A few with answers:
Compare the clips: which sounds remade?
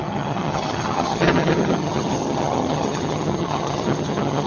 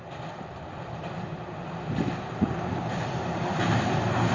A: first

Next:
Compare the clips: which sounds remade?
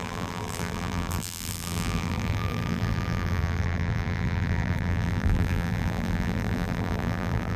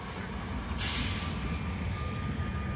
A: first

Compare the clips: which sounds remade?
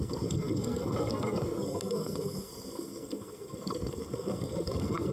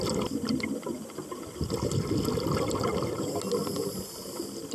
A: first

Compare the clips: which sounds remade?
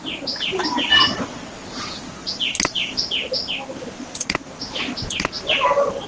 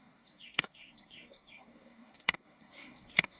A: second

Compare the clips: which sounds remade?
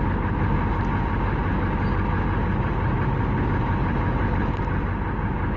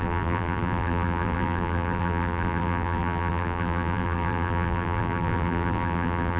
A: second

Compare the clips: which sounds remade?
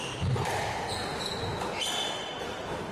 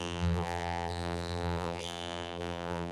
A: second